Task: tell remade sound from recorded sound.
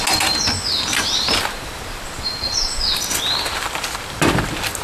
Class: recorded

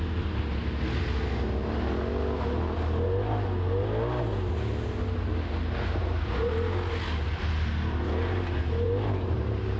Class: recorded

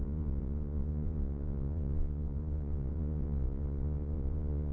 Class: remade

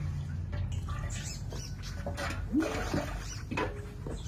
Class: recorded